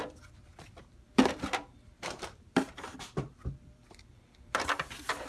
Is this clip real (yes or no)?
no